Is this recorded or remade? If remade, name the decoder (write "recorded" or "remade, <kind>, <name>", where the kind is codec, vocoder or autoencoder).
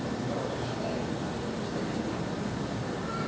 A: recorded